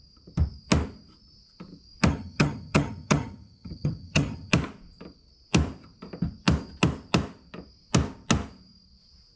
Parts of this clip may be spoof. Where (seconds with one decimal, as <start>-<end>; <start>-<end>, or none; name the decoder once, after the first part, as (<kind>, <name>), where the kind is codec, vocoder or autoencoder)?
2.1-4.5 (vocoder, HiFi-GAN)